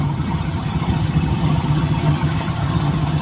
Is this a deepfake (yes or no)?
yes